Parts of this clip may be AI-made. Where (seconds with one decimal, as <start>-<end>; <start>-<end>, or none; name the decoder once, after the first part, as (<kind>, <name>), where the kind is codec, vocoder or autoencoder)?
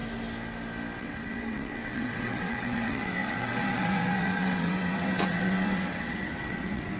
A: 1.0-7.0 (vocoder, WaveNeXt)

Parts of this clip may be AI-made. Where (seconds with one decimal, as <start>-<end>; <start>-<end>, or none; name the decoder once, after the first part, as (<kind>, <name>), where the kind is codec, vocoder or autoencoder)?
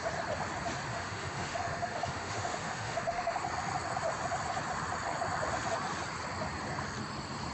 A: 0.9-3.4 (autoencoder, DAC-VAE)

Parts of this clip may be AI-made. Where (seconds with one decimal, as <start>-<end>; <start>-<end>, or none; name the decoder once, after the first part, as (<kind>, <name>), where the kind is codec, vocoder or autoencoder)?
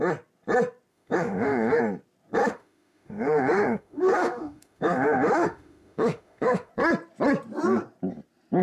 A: 0.9-1.8 (autoencoder, DAC-VAE); 2.4-6.7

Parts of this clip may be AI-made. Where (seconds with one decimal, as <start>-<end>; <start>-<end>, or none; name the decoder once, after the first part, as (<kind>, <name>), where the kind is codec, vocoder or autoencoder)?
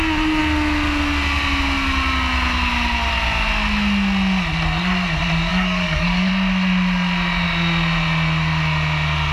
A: 5.5-6.3 (codec, DAC)